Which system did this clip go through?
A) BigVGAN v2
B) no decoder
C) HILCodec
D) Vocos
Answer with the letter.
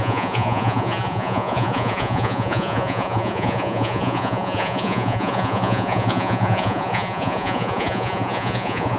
D